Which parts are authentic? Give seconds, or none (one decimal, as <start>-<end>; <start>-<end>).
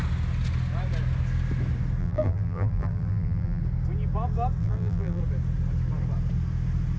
0.0-2.0; 3.6-4.6; 5.2-7.0